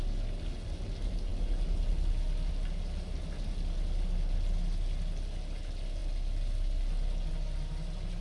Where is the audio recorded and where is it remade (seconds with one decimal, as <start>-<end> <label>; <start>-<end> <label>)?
0.0-8.2 recorded